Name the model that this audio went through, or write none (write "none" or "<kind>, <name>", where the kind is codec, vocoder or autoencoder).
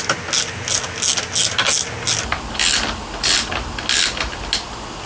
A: none